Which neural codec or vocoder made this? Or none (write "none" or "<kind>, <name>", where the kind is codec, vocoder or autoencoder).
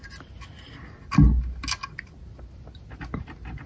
none